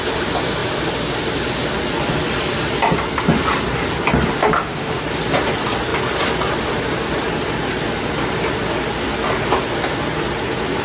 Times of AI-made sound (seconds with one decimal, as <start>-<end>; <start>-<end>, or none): 4.4-5.0